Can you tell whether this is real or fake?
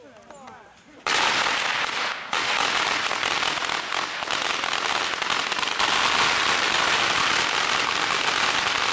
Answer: real